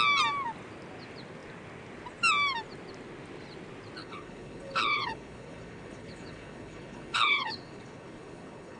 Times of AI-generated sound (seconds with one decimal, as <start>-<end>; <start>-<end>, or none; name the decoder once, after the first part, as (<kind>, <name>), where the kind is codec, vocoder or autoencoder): 4.0-8.8 (codec, HILCodec)